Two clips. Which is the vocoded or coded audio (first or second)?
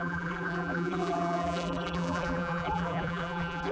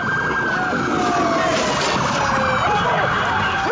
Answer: first